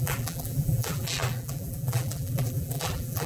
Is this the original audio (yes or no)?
no